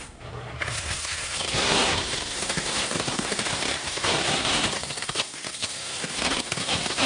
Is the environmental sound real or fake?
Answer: fake